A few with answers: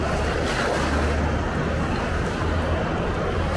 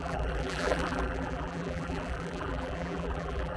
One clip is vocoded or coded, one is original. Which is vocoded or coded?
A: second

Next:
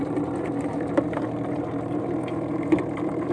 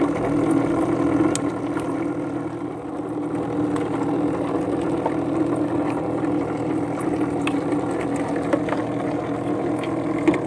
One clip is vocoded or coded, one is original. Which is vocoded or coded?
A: first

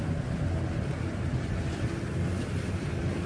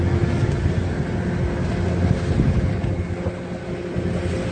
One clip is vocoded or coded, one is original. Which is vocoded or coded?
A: first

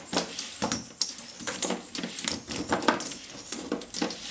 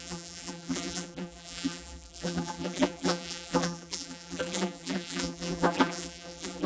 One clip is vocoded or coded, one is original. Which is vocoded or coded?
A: second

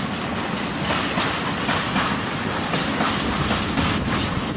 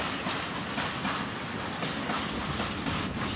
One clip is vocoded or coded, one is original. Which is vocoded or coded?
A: first